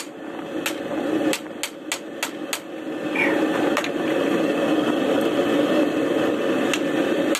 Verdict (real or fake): real